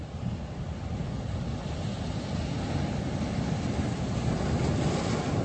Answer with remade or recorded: recorded